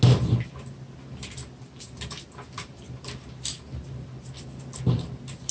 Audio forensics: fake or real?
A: real